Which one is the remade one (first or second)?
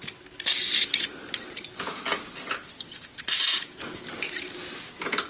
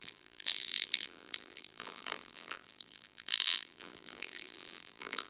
second